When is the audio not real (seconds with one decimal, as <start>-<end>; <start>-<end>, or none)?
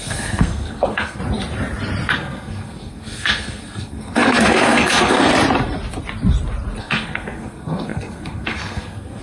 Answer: 0.0-1.2; 2.1-5.3; 6.8-9.2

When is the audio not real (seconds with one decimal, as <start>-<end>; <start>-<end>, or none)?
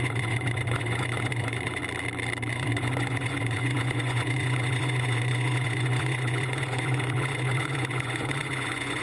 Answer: 0.0-1.8; 2.5-9.0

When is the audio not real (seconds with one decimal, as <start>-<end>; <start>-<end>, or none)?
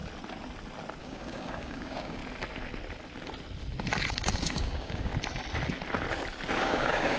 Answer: 1.0-2.2; 4.1-5.1; 6.6-7.2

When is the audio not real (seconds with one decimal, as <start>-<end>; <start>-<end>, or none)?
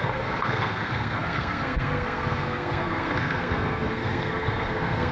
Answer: 0.0-5.1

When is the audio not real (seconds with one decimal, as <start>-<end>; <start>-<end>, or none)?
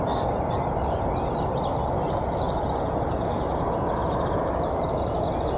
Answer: none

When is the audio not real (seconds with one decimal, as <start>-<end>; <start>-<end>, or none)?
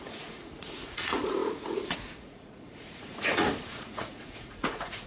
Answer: 0.0-5.1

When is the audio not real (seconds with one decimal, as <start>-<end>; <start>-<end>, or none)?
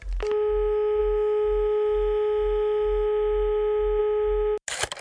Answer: none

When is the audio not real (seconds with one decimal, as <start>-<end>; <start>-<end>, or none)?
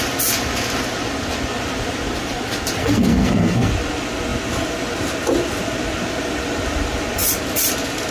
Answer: 2.8-3.7